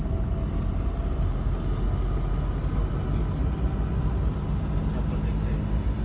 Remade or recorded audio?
recorded